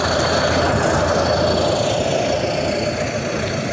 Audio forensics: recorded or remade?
recorded